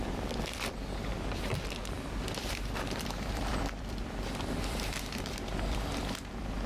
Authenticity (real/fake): fake